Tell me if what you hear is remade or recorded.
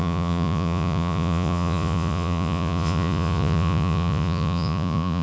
remade